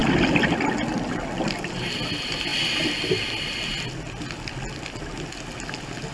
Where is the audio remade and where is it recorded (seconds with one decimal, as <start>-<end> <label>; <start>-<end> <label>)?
0.0-6.1 recorded